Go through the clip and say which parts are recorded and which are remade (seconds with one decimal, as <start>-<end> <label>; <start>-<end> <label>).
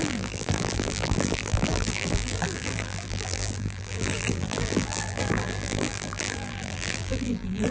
0.0-7.7 remade